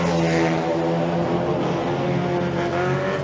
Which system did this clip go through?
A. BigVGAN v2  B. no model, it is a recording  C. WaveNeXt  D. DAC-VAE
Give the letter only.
B